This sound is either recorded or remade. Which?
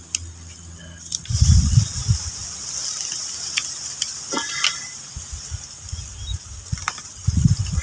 recorded